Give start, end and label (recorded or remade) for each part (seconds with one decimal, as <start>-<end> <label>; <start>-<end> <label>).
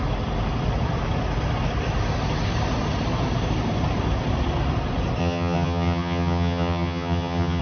0.0-5.2 recorded; 5.2-7.6 remade